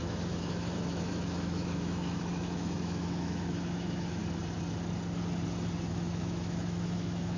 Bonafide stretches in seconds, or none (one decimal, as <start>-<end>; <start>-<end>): 4.2-5.9